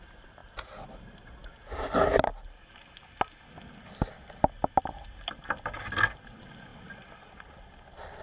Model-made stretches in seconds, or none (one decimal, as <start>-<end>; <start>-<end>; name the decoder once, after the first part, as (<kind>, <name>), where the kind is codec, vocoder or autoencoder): none